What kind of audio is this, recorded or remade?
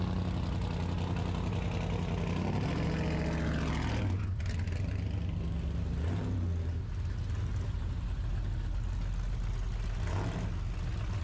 recorded